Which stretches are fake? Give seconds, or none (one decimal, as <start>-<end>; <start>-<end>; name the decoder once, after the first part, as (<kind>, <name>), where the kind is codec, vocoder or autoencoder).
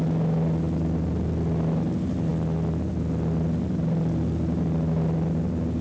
none